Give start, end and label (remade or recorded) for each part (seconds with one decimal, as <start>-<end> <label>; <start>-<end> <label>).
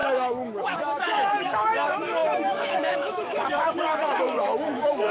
0.0-5.1 remade